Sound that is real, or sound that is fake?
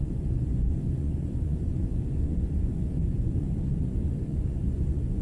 fake